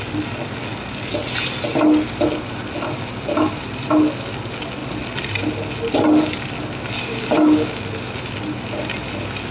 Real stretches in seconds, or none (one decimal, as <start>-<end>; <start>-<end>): 0.0-7.1; 7.8-9.5